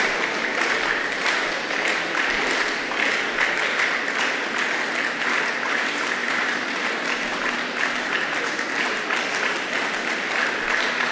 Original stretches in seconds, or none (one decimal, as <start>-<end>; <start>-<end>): 0.0-6.2; 6.9-11.1